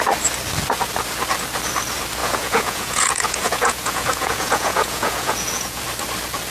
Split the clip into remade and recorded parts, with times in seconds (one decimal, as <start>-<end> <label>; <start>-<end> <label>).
0.0-2.2 recorded; 2.2-5.8 remade; 5.8-6.5 recorded